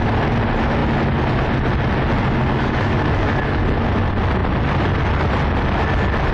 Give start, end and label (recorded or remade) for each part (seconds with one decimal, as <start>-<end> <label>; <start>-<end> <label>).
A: 0.0-2.5 recorded; 2.5-3.6 remade; 3.6-6.3 recorded